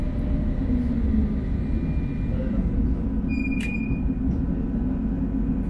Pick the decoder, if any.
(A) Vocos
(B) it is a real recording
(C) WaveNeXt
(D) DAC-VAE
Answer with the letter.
B